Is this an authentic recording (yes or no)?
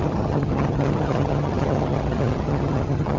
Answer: no